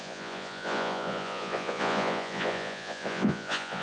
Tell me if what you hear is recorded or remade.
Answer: remade